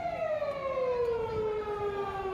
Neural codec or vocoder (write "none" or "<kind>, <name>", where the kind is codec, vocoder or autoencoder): none